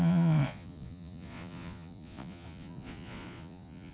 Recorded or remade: remade